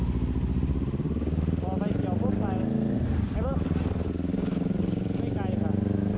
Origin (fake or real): real